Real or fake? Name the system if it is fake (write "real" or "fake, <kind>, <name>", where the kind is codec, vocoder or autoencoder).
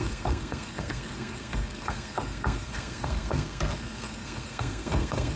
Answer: fake, codec, SNAC